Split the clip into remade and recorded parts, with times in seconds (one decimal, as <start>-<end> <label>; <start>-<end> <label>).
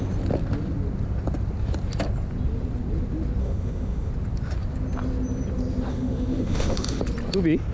0.0-3.4 recorded; 3.4-4.1 remade; 4.1-5.9 recorded; 5.9-7.0 remade; 7.0-7.7 recorded